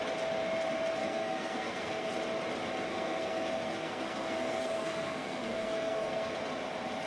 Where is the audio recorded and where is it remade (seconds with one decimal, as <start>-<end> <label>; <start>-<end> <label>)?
0.0-1.0 recorded; 1.0-2.1 remade; 2.1-2.9 recorded; 2.9-6.3 remade; 6.3-7.1 recorded